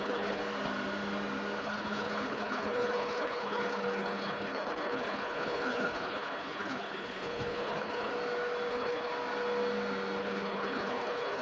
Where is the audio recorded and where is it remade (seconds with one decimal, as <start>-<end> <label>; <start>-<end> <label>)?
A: 0.0-0.4 remade; 0.4-1.6 recorded; 1.6-8.1 remade; 8.1-8.7 recorded; 8.7-9.1 remade; 9.1-10.2 recorded; 10.2-11.4 remade